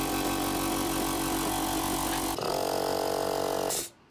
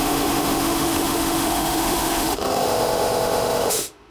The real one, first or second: first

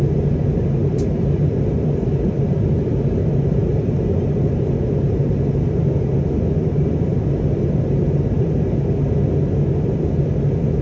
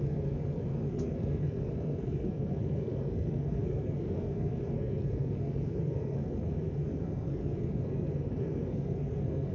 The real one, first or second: first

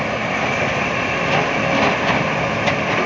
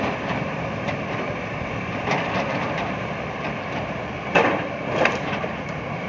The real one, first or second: first